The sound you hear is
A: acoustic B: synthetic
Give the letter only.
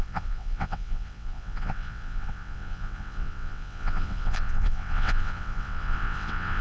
B